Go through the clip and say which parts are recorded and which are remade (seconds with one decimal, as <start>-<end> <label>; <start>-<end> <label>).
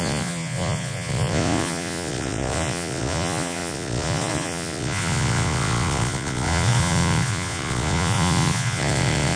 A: 0.0-9.4 remade